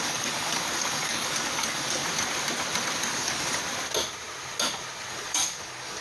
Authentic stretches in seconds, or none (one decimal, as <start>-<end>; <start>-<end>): 2.0-3.1; 3.6-5.1